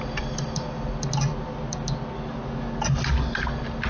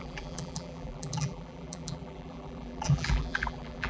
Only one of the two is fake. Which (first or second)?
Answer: second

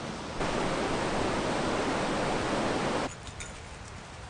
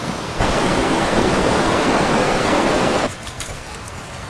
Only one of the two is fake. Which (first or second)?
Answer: second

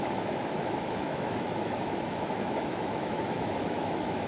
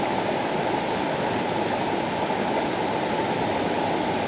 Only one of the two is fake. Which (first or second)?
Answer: first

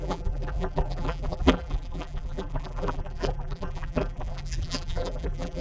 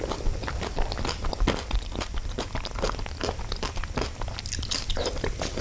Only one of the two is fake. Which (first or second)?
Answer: first